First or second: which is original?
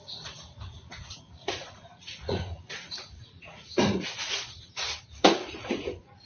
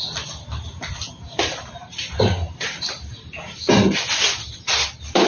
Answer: second